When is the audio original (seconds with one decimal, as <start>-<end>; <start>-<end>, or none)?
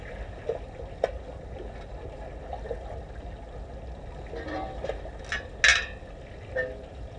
0.0-7.2